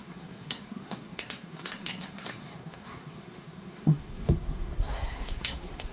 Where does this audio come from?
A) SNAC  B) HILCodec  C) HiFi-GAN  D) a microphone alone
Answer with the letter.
A